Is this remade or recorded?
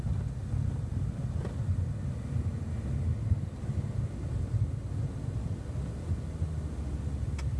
recorded